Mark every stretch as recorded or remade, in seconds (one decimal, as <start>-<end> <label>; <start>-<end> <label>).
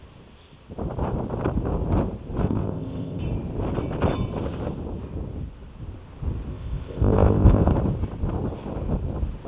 0.0-2.4 recorded; 2.4-3.2 remade; 3.2-6.5 recorded; 6.5-7.7 remade; 7.7-9.5 recorded